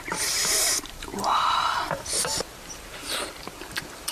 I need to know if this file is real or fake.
fake